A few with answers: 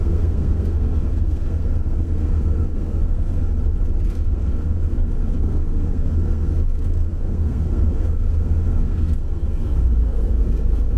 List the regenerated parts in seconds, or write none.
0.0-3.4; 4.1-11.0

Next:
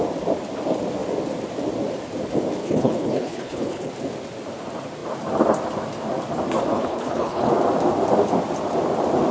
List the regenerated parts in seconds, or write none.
2.6-3.9; 6.7-7.5

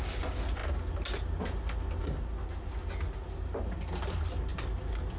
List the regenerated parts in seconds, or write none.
none

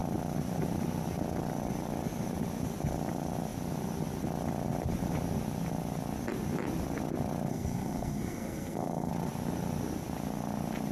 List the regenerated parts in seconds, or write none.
7.5-9.1

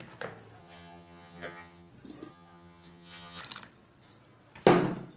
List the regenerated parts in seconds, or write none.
0.6-1.9; 2.3-3.4

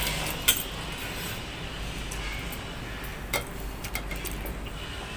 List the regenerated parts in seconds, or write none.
none

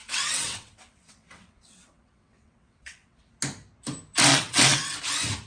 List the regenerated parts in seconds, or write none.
0.0-3.3; 4.3-5.0

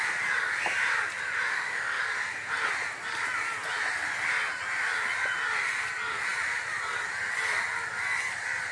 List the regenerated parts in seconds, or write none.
1.5-2.0